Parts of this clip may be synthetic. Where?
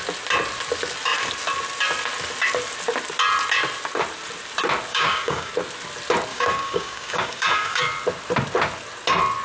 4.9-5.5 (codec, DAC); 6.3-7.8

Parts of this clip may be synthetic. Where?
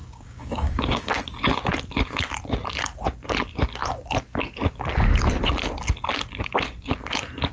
0.0-1.1 (codec, DAC)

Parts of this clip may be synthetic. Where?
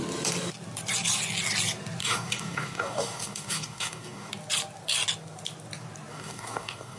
2.0-4.3 (codec, DAC); 6.1-7.0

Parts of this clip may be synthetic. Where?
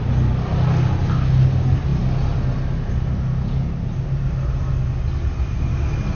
none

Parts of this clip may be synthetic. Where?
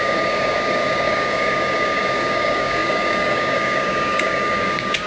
0.0-5.1 (codec, DAC)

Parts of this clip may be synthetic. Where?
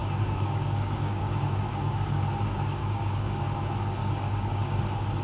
0.0-1.2 (codec, DAC); 1.7-2.2; 2.8-3.4; 4.0-4.8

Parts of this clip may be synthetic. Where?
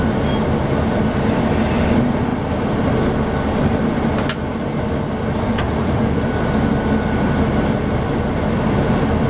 none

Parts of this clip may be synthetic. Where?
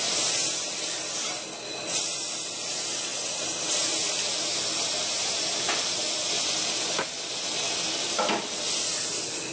none